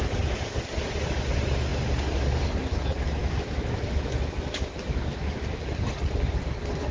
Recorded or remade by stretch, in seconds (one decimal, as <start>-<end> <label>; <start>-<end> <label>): 0.0-3.2 recorded; 3.2-5.6 remade; 5.6-6.9 recorded